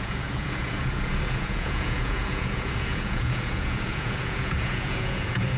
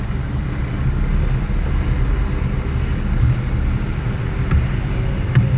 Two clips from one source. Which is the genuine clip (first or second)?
second